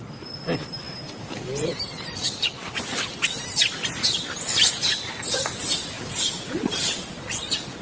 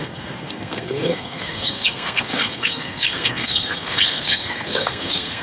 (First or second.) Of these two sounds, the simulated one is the second